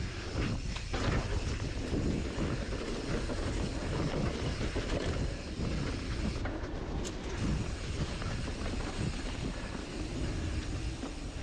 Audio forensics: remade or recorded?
recorded